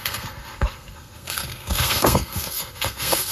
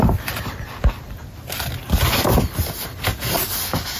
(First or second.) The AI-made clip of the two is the first